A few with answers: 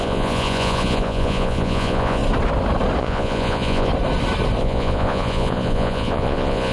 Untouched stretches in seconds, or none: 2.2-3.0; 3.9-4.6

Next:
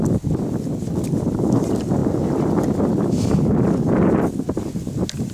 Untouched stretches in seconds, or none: 0.0-5.3

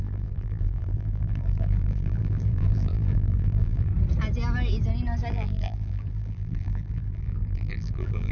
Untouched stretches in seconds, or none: 3.9-5.3

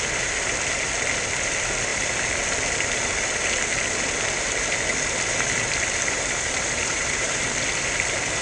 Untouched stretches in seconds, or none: 0.0-6.8; 7.4-8.4

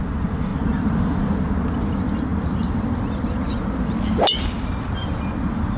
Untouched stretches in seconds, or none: 0.0-5.8